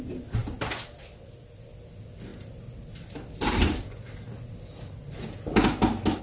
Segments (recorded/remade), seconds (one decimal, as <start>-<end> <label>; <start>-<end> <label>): 0.0-6.2 recorded

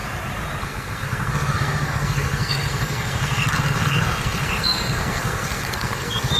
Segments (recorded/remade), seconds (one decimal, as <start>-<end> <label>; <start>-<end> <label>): 0.0-0.6 recorded; 0.6-6.4 remade

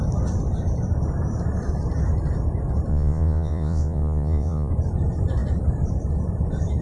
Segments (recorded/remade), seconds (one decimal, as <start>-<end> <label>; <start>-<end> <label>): 0.0-2.9 recorded; 2.9-4.7 remade; 4.7-6.8 recorded

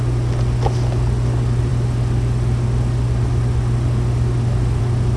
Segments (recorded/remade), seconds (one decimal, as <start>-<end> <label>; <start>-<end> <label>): 0.0-5.2 recorded

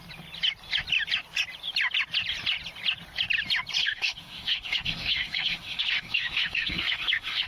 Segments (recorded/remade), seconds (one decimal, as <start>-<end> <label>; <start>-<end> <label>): 0.0-3.8 recorded; 3.8-7.5 remade

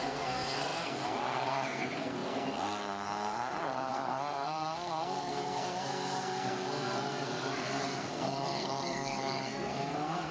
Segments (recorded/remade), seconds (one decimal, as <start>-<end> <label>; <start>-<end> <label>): 0.0-10.3 remade

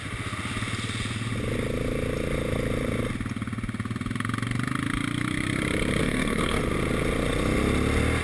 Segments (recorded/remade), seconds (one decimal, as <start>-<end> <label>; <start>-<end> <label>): 0.0-6.0 recorded; 6.0-6.6 remade; 6.6-8.2 recorded

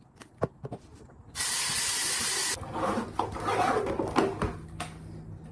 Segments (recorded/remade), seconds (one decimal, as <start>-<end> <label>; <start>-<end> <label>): 0.0-5.5 recorded